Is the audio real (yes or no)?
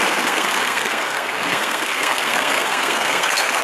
no